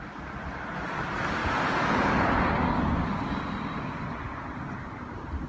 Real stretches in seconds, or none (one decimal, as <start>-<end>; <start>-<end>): 0.0-1.4; 2.5-5.5